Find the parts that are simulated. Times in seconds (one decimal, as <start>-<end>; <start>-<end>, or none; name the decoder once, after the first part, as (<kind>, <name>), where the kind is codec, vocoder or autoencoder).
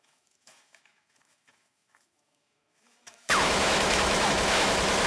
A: 0.0-5.1 (autoencoder, DAC-VAE)